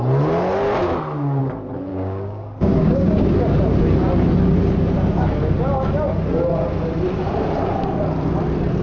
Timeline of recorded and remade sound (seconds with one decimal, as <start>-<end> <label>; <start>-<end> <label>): 0.0-1.9 recorded; 1.9-3.2 remade; 3.2-8.8 recorded